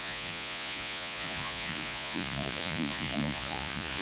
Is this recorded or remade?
remade